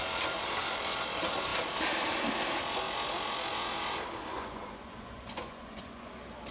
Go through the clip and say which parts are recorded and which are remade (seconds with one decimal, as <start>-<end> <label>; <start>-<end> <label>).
0.0-4.3 recorded; 4.3-6.1 remade; 6.1-6.5 recorded